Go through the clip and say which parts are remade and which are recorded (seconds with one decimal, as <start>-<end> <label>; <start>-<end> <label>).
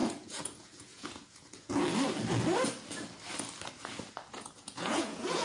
0.0-1.8 remade; 1.8-4.3 recorded; 4.3-5.4 remade